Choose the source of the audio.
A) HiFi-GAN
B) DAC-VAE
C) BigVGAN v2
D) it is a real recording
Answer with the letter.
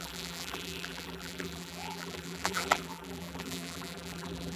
C